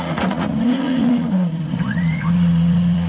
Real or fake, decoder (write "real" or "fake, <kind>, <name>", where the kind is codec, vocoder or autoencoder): fake, vocoder, Vocos